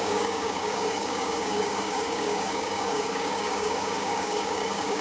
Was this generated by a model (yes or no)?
yes